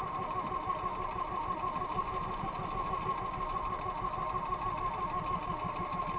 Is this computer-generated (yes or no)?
no